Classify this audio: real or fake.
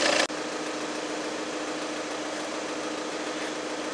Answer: real